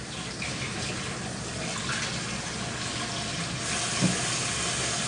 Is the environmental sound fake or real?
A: real